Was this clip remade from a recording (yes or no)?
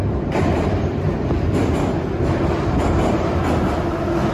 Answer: no